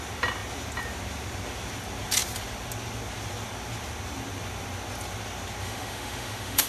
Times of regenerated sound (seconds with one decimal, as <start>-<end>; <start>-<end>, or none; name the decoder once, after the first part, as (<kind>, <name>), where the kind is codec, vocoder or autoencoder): 5.6-6.7 (autoencoder, DAC-VAE)